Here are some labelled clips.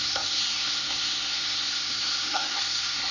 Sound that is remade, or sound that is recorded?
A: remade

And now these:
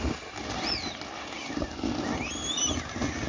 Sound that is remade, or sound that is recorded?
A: recorded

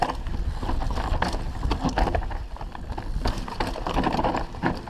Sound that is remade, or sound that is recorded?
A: recorded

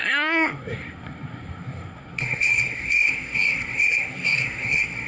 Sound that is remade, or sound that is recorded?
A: remade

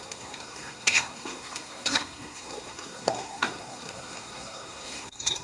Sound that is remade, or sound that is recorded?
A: remade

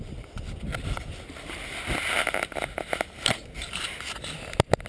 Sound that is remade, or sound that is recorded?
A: recorded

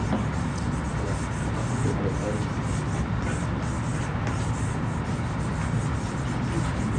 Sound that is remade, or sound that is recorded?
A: recorded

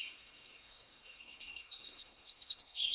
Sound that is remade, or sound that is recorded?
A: remade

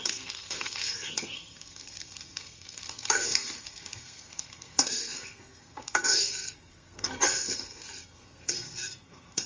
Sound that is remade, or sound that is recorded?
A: remade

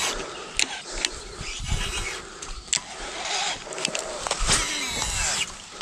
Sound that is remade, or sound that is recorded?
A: recorded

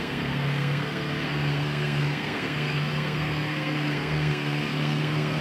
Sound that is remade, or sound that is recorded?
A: remade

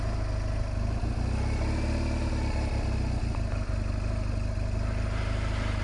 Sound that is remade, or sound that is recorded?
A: recorded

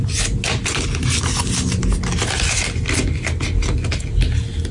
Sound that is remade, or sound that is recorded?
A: recorded